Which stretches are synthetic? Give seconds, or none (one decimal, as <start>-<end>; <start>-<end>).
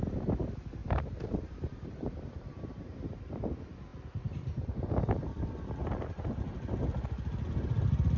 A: 0.8-3.3